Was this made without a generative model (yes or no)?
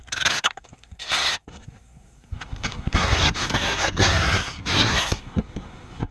no